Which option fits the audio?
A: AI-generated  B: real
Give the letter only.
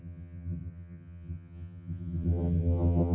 A